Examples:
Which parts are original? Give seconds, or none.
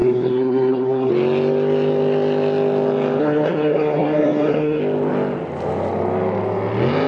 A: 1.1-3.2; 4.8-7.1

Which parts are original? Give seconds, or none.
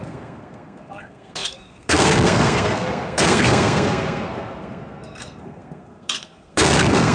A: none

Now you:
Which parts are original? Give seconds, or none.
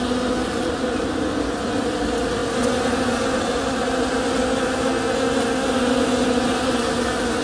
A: 0.0-7.4